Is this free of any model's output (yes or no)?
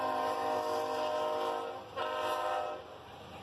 yes